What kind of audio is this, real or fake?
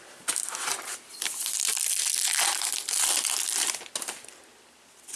real